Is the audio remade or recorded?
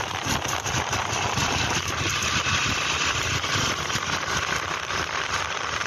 remade